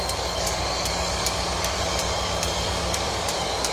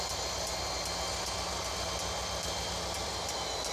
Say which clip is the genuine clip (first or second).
second